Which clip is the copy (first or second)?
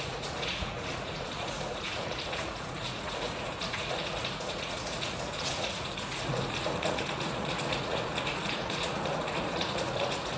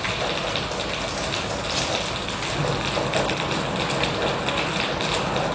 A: first